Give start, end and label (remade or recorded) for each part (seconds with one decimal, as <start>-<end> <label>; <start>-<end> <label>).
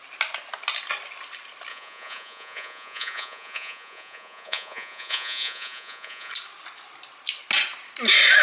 0.0-1.7 recorded; 1.7-6.3 remade; 6.3-8.4 recorded